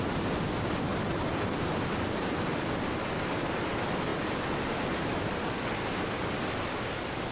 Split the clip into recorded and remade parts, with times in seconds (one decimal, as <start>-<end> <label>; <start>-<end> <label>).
0.0-0.9 recorded; 0.9-2.7 remade; 2.7-7.3 recorded